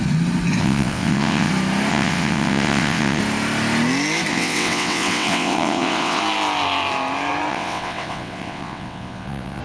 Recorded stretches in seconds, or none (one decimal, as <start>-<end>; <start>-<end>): 0.0-0.6; 1.5-1.9; 3.2-4.3; 6.2-7.5